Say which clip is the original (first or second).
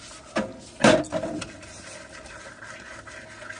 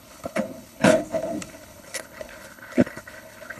first